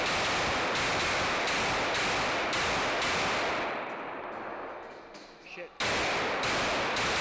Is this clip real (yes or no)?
yes